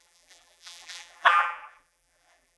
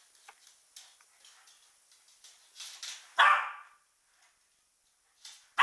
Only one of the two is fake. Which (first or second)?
first